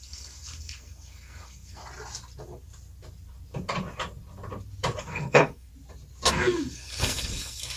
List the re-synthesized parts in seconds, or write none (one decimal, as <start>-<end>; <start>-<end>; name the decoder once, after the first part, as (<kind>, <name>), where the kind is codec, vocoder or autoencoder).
0.0-1.8 (codec, SNAC); 5.0-5.7; 6.3-7.8